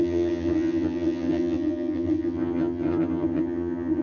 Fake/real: fake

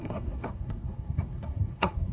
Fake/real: fake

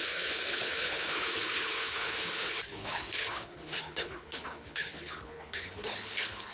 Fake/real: fake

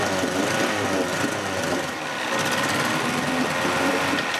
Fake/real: real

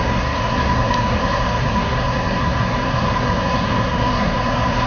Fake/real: fake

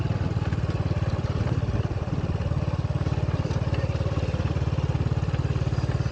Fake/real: real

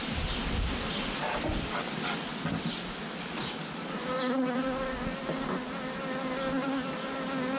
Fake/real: real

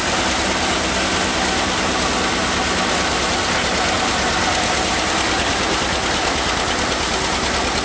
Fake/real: real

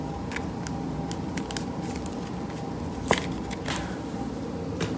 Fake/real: real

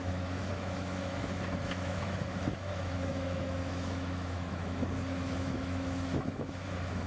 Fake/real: fake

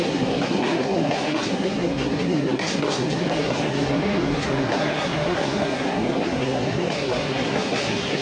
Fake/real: fake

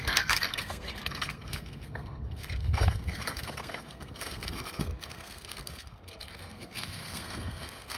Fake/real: fake